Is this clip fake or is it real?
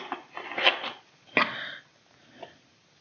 real